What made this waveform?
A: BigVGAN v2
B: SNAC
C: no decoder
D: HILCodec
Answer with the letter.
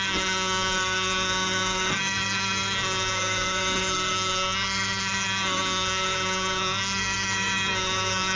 B